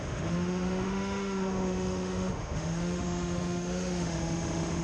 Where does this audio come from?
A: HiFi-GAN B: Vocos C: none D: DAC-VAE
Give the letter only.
D